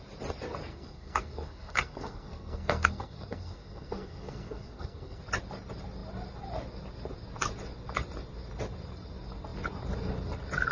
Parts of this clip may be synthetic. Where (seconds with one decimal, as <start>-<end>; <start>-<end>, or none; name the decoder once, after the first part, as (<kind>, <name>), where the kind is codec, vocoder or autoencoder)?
0.7-5.2 (codec, SNAC)